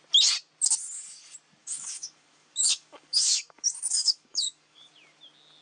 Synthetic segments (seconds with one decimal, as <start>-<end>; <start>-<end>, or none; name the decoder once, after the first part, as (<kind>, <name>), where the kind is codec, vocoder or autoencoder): 1.6-4.9 (codec, DAC)